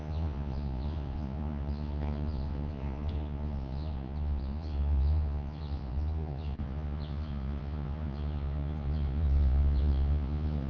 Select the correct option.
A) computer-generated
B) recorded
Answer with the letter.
A